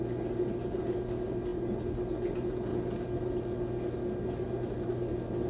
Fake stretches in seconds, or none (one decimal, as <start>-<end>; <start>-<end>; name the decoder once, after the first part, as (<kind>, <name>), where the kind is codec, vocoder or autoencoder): none